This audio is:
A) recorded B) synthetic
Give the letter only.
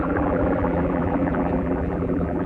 B